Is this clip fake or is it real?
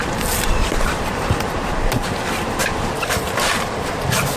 fake